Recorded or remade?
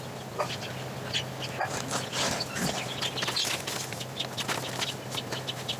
recorded